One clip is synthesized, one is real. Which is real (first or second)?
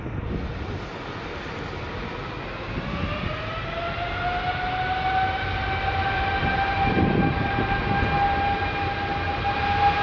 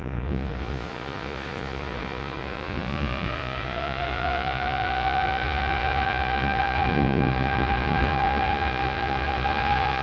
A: first